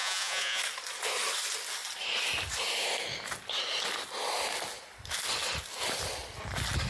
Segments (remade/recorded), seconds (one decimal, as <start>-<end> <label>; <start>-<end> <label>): 0.0-0.6 remade; 0.6-6.9 recorded